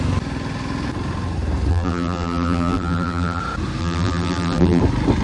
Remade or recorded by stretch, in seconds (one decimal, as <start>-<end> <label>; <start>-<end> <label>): 0.0-1.7 recorded; 1.7-3.4 remade; 3.4-3.8 recorded; 3.8-4.8 remade; 4.8-5.2 recorded